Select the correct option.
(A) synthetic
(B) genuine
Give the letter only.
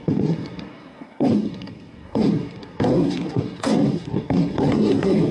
A